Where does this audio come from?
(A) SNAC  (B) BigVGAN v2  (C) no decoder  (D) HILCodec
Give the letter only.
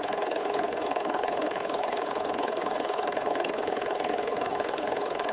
D